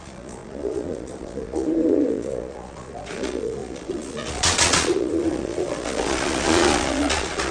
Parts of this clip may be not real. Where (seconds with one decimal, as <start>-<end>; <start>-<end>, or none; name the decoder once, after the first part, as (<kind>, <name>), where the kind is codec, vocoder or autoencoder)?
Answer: 0.0-7.5 (vocoder, Vocos)